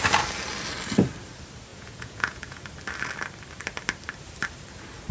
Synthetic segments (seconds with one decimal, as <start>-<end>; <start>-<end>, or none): 1.7-2.6